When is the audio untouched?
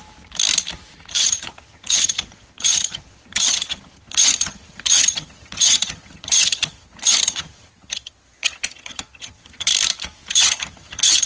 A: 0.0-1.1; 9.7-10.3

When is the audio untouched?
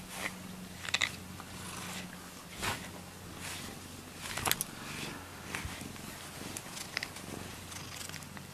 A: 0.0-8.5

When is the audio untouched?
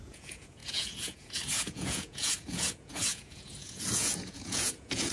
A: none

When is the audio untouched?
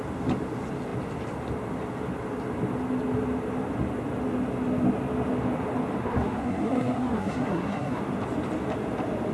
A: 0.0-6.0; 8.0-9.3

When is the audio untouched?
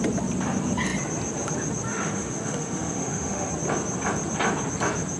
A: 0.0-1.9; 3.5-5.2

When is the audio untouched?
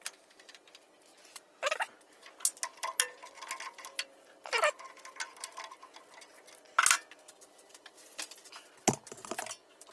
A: 0.0-9.9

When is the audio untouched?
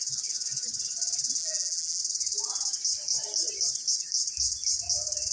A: 0.0-1.4; 2.0-5.3